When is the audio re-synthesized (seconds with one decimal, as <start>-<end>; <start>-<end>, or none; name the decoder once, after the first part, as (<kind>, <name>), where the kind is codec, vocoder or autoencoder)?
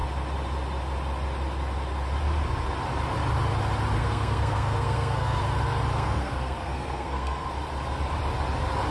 4.0-5.4 (codec, SNAC); 5.9-7.5